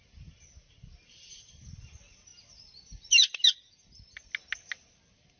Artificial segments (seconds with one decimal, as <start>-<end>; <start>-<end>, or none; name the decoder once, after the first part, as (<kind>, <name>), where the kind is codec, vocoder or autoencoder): none